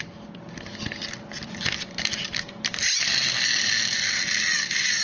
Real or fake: real